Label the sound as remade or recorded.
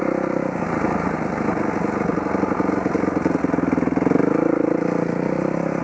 recorded